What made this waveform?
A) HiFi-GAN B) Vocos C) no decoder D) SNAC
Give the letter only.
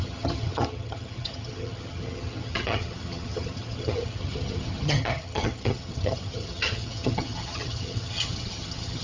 A